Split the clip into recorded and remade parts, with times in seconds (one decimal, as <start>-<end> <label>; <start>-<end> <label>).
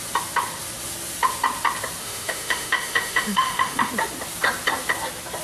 0.0-2.0 recorded; 2.0-3.9 remade; 3.9-5.4 recorded